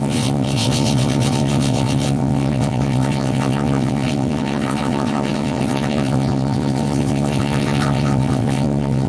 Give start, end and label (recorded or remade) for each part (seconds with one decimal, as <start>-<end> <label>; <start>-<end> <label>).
0.0-9.1 remade

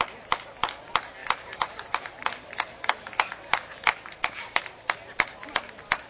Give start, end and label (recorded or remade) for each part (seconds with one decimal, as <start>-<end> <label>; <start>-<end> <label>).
0.0-1.2 recorded; 1.2-2.9 remade; 2.9-3.9 recorded; 3.9-5.0 remade; 5.0-6.1 recorded

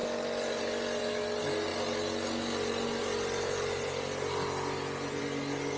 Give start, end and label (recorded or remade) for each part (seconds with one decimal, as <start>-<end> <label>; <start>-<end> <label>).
0.0-5.8 recorded

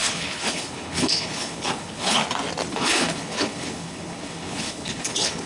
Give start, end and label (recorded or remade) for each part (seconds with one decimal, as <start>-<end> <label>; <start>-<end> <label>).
0.0-2.2 remade; 2.2-2.7 recorded; 2.7-5.5 remade

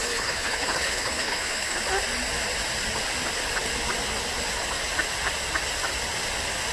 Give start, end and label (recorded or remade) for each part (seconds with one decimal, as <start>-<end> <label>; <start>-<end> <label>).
0.0-1.8 remade; 1.8-6.7 recorded

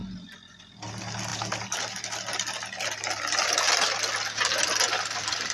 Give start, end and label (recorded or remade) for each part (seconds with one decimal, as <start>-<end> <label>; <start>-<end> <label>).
0.0-5.5 recorded

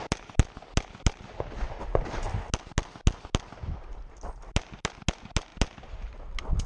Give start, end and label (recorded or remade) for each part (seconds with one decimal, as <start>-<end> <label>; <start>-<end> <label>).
0.0-6.7 recorded